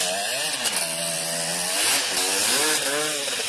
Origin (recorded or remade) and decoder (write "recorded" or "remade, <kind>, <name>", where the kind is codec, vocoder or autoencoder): recorded